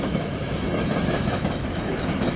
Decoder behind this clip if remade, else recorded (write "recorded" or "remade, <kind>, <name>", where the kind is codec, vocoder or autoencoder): remade, autoencoder, DAC-VAE